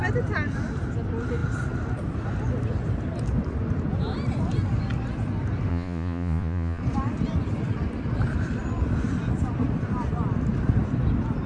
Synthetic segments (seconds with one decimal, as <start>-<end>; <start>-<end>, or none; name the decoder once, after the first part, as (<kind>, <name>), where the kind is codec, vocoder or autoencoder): 5.7-6.8 (vocoder, Vocos)